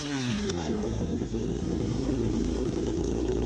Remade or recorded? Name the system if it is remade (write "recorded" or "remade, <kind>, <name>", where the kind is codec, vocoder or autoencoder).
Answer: remade, codec, SNAC